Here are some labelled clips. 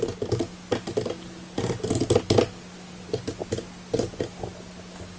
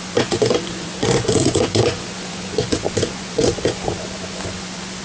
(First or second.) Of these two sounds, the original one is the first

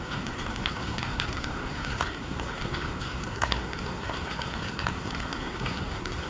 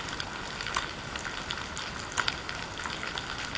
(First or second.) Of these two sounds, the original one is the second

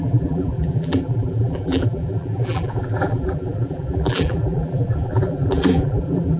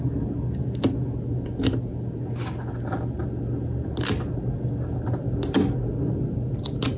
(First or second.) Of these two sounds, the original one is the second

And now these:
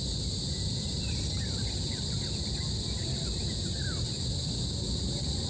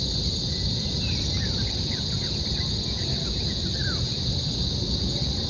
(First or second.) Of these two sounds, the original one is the second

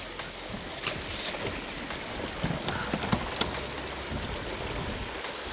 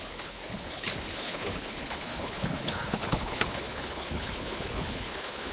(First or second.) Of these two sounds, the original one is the first